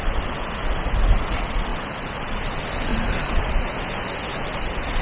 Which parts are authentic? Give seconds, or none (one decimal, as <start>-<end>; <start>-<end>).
0.0-1.7; 2.4-2.9; 3.5-5.0